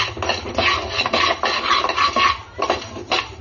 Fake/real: real